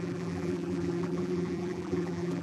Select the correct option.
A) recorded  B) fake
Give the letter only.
B